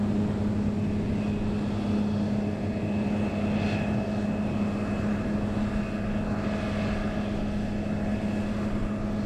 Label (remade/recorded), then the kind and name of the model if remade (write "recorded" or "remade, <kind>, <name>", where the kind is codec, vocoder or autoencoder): recorded